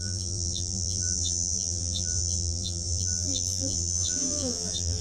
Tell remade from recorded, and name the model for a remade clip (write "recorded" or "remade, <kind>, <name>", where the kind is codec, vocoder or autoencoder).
remade, vocoder, BigVGAN v2